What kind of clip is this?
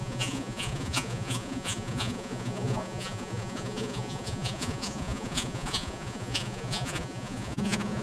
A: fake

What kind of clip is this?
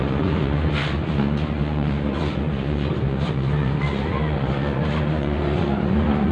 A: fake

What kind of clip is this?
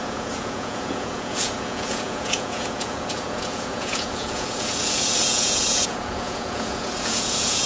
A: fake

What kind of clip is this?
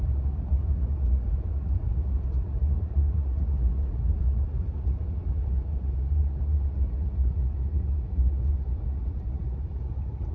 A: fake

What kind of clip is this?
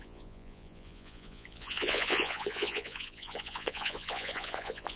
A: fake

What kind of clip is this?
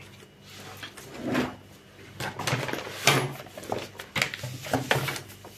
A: real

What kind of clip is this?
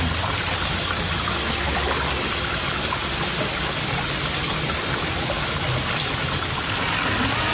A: real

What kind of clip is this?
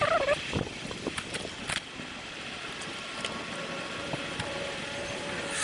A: real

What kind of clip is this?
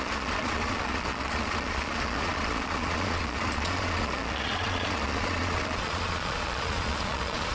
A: fake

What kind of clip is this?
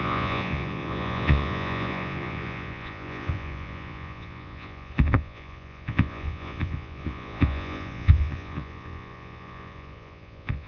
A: fake